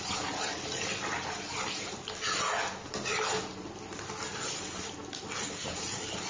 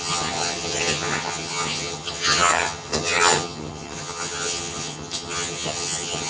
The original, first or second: first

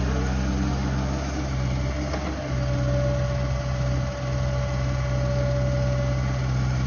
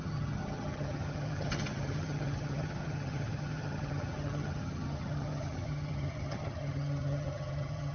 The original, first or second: first